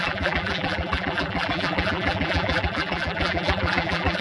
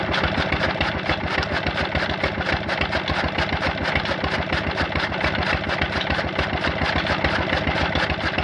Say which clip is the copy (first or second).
first